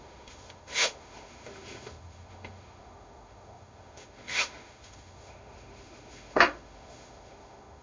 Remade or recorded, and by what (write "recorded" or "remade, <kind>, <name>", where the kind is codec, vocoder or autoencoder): remade, autoencoder, DAC-VAE